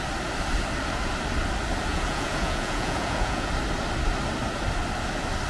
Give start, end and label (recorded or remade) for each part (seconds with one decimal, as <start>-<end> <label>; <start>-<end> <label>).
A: 0.0-1.9 recorded; 1.9-3.5 remade; 3.5-5.5 recorded